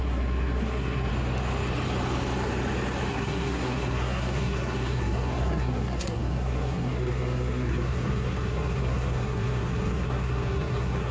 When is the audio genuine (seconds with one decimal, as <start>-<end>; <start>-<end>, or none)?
1.1-3.1

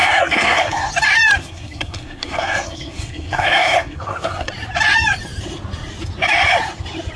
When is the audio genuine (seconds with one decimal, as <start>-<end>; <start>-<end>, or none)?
0.9-1.4; 4.5-7.2

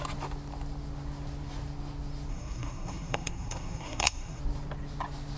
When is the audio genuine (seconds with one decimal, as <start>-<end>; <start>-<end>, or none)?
0.0-2.3; 4.4-5.4